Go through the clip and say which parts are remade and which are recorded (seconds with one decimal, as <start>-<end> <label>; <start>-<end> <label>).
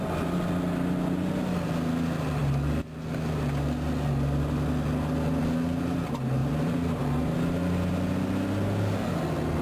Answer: 0.0-6.4 recorded; 6.4-7.0 remade; 7.0-9.6 recorded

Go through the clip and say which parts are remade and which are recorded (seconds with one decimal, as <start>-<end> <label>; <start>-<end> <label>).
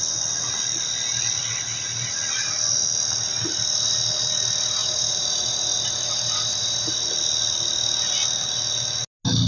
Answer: 0.0-4.8 recorded; 4.8-6.9 remade; 6.9-9.5 recorded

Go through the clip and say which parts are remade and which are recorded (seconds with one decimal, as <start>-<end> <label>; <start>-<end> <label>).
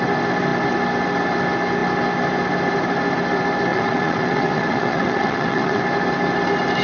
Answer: 0.0-3.7 recorded; 3.7-5.8 remade; 5.8-6.8 recorded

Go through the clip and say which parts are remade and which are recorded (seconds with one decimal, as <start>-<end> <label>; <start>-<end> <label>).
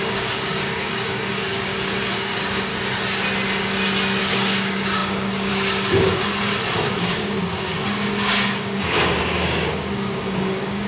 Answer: 0.0-2.7 remade; 2.7-4.2 recorded; 4.2-6.3 remade; 6.3-6.8 recorded; 6.8-10.9 remade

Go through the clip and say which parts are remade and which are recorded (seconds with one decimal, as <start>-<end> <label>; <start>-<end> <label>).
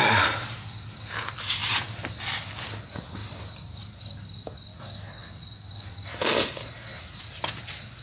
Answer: 0.0-1.6 recorded; 1.6-2.5 remade; 2.5-3.2 recorded; 3.2-3.8 remade; 3.8-5.2 recorded; 5.2-5.9 remade; 5.9-8.0 recorded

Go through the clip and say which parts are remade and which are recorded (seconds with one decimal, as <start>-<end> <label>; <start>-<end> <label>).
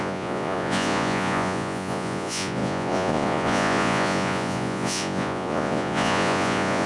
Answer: 0.0-6.9 remade